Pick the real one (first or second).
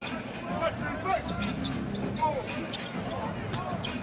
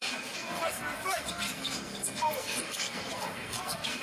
first